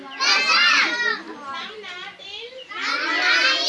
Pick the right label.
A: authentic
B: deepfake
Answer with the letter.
A